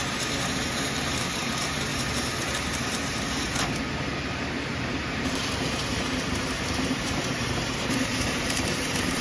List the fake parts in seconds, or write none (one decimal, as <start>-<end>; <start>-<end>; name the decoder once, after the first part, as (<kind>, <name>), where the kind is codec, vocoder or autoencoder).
0.0-9.2 (vocoder, BigVGAN v2)